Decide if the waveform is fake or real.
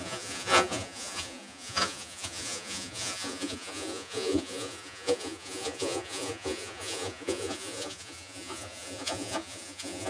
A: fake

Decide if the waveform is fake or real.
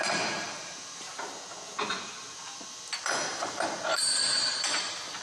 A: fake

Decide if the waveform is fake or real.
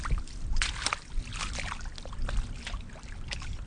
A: real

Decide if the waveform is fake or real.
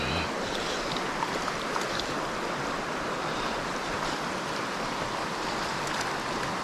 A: real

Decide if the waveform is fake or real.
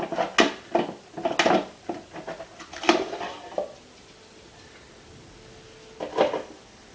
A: real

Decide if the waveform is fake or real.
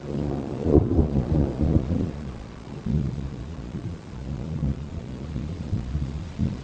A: fake